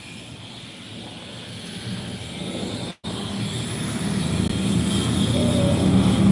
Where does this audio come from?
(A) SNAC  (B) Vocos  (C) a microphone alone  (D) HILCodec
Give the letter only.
C